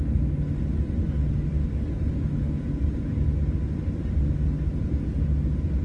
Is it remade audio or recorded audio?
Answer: recorded